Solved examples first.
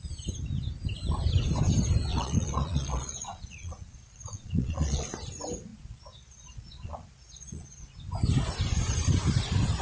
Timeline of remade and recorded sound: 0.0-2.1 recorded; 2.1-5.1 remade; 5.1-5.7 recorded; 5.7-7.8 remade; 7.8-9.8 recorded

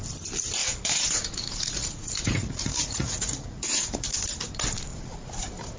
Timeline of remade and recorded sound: 0.0-0.6 recorded; 0.6-4.1 remade; 4.1-4.9 recorded; 4.9-5.8 remade

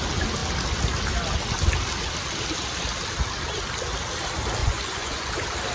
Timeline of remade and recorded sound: 0.0-4.6 recorded; 4.6-5.3 remade; 5.3-5.7 recorded

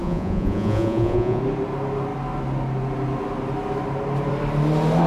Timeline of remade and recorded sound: 0.0-1.4 remade; 1.4-5.1 recorded

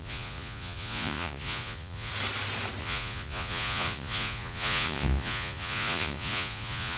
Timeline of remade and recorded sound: 0.0-2.1 remade; 2.1-2.8 recorded; 2.8-7.0 remade

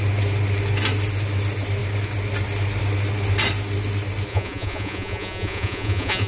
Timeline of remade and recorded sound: 0.0-4.3 recorded; 4.3-6.3 remade

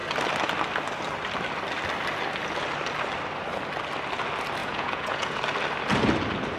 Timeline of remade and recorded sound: 0.0-4.6 recorded; 4.6-5.4 remade; 5.4-6.6 recorded

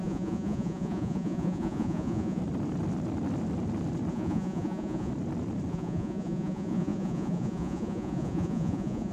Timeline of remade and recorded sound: 0.0-2.4 remade; 2.4-4.1 recorded; 4.1-5.1 remade; 5.1-5.7 recorded; 5.7-9.1 remade